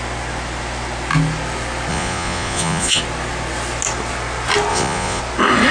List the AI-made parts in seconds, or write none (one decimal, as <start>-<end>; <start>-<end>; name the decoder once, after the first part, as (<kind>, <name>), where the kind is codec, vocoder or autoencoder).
1.9-3.0 (vocoder, Vocos); 4.7-5.2